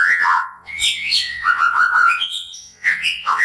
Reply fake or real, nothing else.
fake